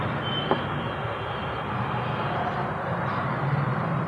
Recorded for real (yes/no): yes